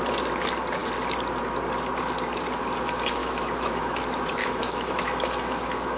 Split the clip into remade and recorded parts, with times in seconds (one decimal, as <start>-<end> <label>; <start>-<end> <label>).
0.0-3.2 recorded; 3.2-4.0 remade; 4.0-4.4 recorded; 4.4-6.0 remade